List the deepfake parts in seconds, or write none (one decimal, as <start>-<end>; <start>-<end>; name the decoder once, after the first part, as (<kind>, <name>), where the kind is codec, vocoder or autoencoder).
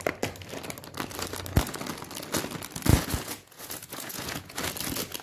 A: 2.9-4.6 (vocoder, Vocos)